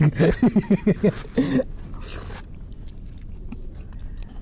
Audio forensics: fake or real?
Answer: real